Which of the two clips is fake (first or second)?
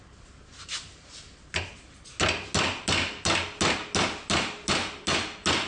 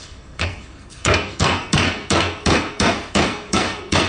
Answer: second